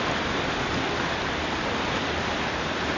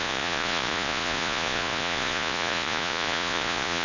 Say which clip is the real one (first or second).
first